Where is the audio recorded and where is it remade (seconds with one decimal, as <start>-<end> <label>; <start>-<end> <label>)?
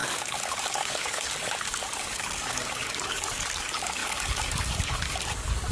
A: 0.0-5.7 remade